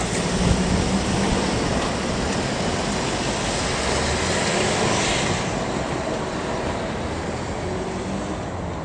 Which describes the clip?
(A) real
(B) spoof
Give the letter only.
A